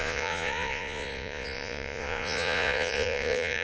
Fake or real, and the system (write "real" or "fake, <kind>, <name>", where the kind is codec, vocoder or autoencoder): fake, vocoder, Vocos